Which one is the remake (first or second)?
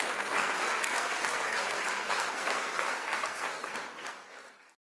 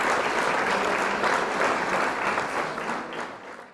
first